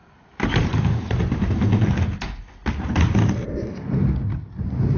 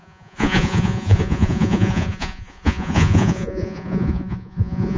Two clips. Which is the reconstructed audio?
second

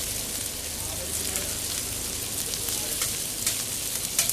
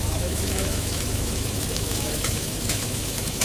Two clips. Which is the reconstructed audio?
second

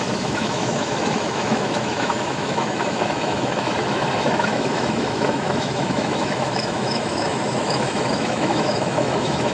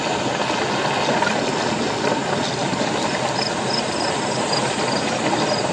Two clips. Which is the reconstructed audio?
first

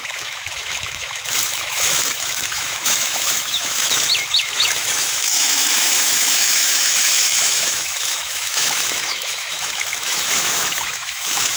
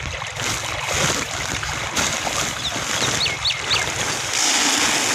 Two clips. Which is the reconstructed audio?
first